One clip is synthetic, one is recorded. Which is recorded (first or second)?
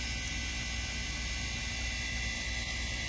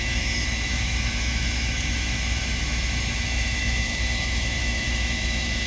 first